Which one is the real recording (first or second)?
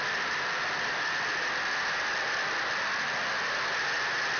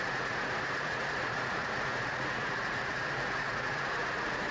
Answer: first